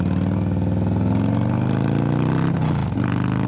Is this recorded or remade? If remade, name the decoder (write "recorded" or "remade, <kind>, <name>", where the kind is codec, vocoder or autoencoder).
recorded